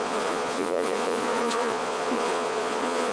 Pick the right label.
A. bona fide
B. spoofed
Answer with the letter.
B